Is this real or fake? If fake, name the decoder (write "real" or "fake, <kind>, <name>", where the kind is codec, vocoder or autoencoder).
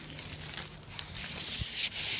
real